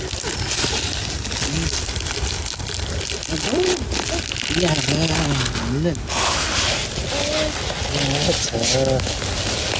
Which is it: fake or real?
real